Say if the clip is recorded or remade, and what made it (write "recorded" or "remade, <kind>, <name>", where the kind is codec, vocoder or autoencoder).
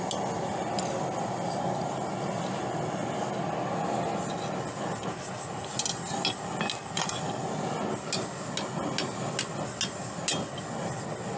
recorded